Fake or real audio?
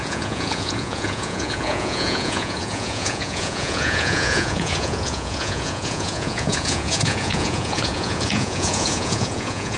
fake